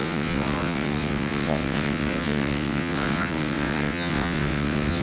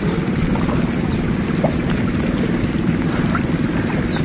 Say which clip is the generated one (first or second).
first